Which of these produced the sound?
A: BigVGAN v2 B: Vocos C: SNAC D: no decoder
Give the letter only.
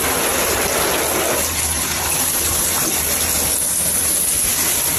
D